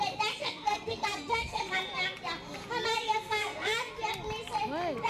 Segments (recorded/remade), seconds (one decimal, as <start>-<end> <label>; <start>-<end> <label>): 0.0-0.4 recorded; 0.4-1.6 remade; 1.6-3.1 recorded; 3.1-3.9 remade; 3.9-5.1 recorded